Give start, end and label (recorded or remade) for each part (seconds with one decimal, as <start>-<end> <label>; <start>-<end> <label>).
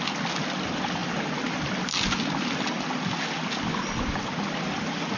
0.0-5.2 recorded